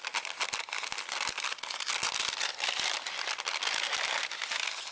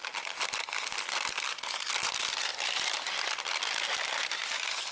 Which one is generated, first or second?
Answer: second